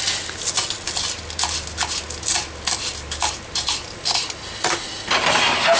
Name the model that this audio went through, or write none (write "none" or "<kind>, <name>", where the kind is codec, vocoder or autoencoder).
none